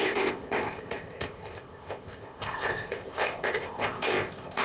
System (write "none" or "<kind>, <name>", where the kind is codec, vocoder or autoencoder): codec, ZipCodec